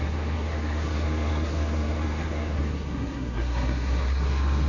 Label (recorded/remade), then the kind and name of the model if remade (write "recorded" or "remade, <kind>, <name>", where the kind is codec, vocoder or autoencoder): remade, codec, SNAC